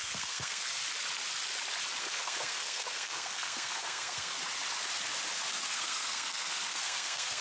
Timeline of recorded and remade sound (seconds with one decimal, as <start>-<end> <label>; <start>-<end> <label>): 0.0-0.8 remade; 0.8-2.0 recorded; 2.0-4.3 remade; 4.3-5.5 recorded; 5.5-7.4 remade